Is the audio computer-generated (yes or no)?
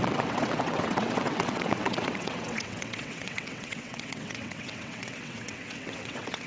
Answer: yes